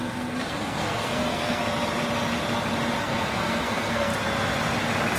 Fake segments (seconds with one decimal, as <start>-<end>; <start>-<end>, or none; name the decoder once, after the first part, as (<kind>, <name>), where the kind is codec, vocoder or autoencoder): 0.0-1.6 (codec, SNAC); 3.0-4.1